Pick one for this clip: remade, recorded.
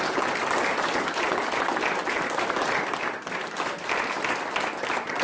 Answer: recorded